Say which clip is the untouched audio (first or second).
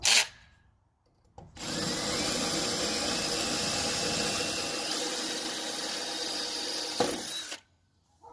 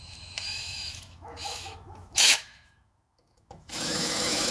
first